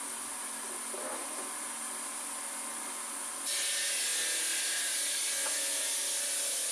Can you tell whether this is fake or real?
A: real